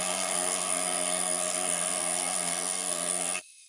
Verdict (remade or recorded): remade